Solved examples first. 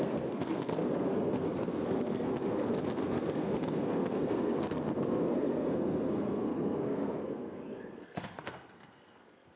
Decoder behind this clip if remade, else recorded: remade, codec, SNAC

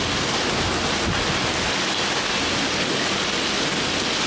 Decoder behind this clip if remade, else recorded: recorded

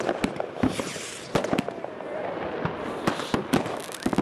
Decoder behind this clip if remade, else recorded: recorded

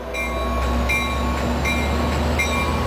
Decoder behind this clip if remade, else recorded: recorded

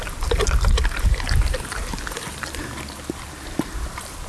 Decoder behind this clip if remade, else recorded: recorded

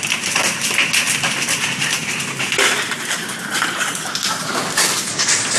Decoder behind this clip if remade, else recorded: recorded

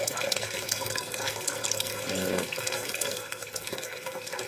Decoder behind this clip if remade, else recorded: remade, codec, SNAC